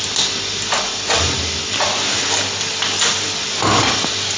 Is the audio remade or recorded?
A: recorded